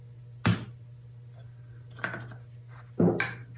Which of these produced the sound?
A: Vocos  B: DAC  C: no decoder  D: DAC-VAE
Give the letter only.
C